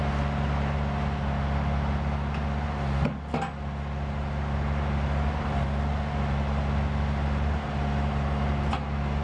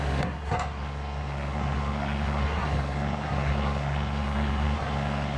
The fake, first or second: second